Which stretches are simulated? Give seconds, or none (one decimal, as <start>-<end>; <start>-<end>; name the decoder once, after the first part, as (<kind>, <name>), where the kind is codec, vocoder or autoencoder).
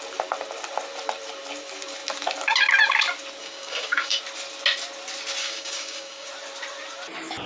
3.4-4.2 (codec, DAC); 5.4-6.3